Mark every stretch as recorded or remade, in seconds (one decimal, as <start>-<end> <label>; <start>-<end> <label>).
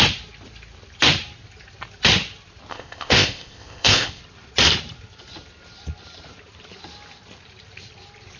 0.0-2.7 recorded; 2.7-4.2 remade; 4.2-8.4 recorded